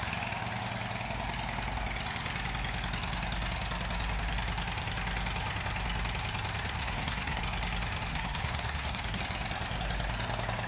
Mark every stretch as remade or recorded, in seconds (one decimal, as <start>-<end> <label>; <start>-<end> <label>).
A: 0.0-6.8 recorded; 6.8-7.4 remade; 7.4-8.1 recorded; 8.1-9.2 remade; 9.2-10.7 recorded